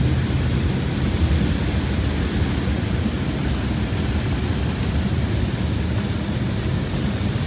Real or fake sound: real